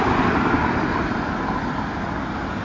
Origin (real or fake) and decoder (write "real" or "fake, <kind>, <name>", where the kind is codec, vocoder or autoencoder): real